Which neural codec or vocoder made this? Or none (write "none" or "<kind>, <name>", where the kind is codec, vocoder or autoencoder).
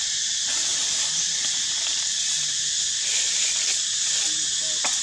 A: none